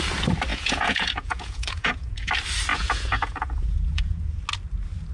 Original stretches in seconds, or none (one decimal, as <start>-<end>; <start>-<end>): 0.0-0.5; 2.3-2.7; 4.4-5.1